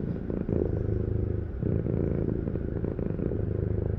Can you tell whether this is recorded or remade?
recorded